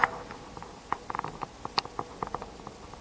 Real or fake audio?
real